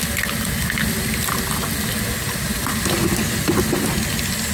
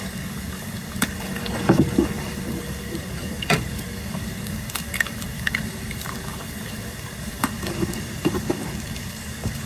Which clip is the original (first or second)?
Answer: first